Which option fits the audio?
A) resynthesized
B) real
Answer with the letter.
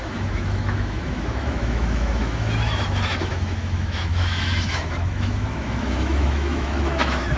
A